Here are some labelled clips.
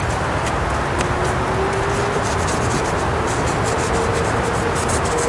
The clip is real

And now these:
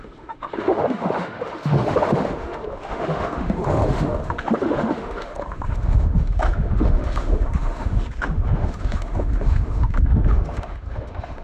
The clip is fake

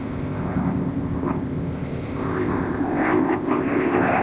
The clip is fake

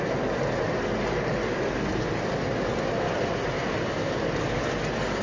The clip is real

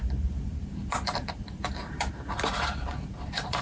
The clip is fake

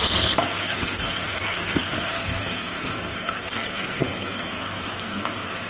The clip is fake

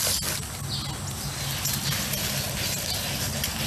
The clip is real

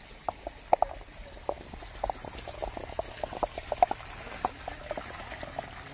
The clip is real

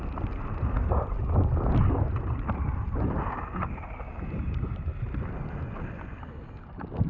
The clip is real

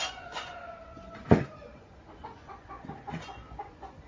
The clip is fake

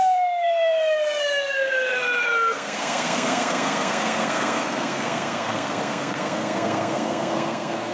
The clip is fake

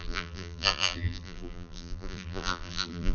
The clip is fake